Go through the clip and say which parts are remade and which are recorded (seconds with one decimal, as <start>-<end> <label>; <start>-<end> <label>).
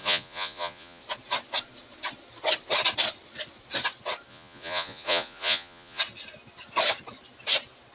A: 0.0-1.0 remade; 1.0-4.3 recorded; 4.3-6.0 remade; 6.0-7.9 recorded